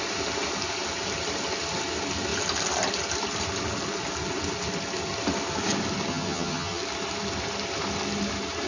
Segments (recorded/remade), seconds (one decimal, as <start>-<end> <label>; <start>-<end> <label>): 0.0-6.1 recorded; 6.1-6.8 remade; 6.8-8.7 recorded